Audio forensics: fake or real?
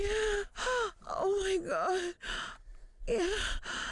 real